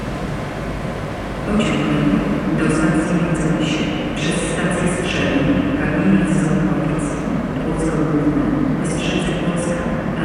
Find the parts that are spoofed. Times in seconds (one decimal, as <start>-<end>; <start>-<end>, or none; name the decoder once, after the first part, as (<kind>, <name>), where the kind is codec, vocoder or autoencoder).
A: none